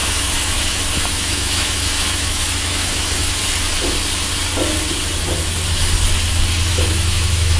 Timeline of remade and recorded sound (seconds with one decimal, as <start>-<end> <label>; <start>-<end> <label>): 0.0-3.4 remade; 3.4-6.7 recorded; 6.7-7.6 remade